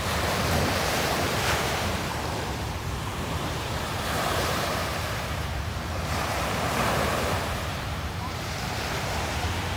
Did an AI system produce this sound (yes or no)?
yes